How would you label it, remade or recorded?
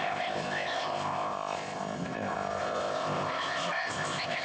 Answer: remade